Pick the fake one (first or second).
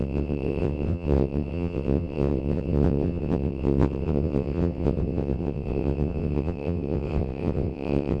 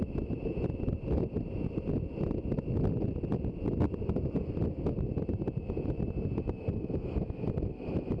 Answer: first